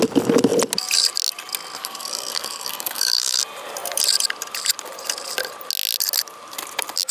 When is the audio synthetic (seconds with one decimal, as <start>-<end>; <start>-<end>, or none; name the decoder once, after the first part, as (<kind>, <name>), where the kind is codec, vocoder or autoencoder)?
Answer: 1.8-3.4 (codec, SNAC)